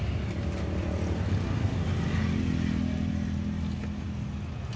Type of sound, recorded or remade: recorded